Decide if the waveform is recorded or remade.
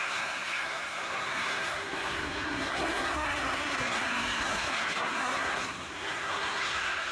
remade